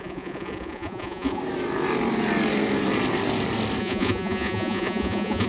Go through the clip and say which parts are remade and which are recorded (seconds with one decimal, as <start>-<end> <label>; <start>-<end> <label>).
0.0-1.4 remade; 1.4-3.8 recorded; 3.8-5.5 remade